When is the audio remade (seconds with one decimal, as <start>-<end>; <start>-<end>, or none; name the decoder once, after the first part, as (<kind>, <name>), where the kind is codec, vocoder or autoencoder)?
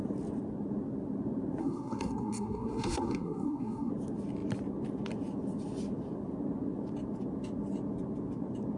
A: 1.6-3.9 (codec, SNAC)